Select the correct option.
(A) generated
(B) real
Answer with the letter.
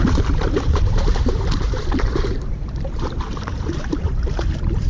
A